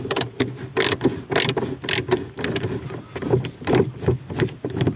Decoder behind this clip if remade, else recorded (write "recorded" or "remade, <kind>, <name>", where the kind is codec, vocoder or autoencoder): recorded